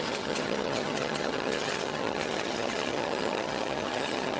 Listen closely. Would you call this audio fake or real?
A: fake